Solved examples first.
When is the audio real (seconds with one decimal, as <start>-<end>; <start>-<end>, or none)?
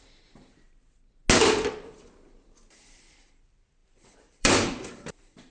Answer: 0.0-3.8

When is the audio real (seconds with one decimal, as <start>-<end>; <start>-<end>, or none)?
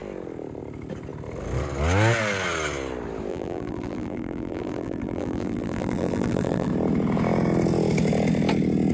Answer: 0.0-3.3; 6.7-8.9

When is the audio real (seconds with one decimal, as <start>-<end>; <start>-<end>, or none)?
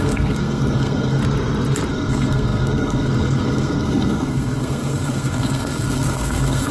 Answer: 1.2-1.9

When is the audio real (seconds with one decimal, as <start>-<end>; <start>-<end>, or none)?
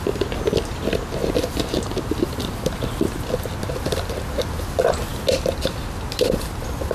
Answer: 0.0-6.9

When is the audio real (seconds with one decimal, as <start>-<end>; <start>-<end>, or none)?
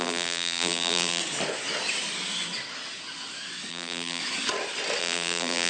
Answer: 1.2-3.7; 4.2-5.0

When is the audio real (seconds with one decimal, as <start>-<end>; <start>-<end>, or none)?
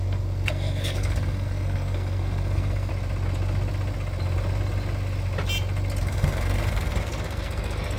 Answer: 2.9-6.0